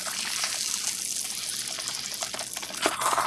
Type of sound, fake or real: real